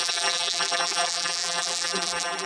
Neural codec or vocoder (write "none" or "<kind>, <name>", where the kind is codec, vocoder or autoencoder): vocoder, BigVGAN v2